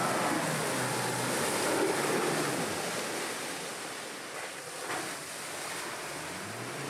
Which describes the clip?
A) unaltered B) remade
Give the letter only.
A